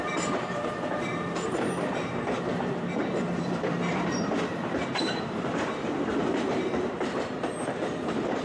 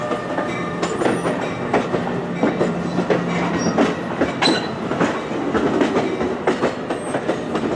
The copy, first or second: first